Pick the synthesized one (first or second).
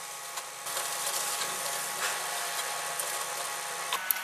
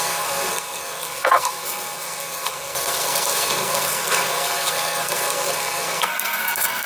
second